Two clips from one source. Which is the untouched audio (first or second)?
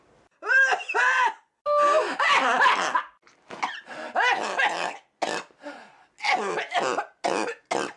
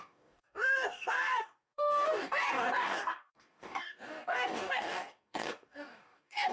first